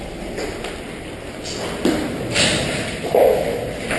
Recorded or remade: recorded